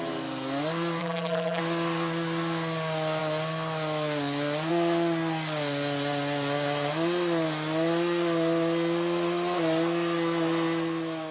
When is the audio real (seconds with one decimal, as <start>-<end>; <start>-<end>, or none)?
0.0-1.0; 1.6-11.3